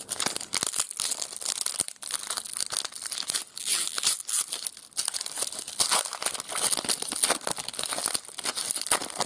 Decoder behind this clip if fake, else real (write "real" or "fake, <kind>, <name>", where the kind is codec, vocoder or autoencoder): real